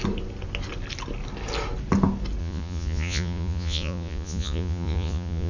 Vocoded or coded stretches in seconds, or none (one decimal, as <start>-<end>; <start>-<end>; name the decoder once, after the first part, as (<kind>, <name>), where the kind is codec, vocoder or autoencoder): 2.4-5.5 (vocoder, Vocos)